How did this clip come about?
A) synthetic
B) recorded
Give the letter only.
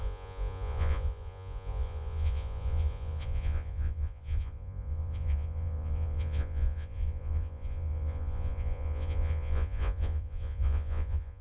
A